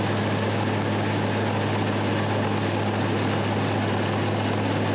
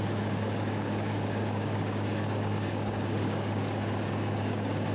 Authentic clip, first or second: first